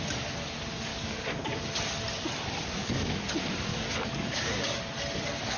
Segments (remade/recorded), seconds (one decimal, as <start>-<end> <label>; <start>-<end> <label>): 0.0-0.9 recorded; 0.9-1.6 remade; 1.6-2.8 recorded; 2.8-3.3 remade; 3.3-3.7 recorded; 3.7-4.8 remade; 4.8-5.6 recorded